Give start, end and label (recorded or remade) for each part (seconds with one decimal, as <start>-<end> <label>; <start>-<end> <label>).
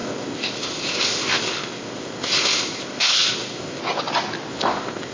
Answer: 0.0-3.8 remade; 3.8-4.5 recorded; 4.5-5.1 remade